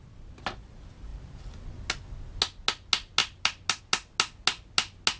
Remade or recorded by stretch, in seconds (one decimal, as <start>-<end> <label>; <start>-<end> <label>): 0.0-5.2 recorded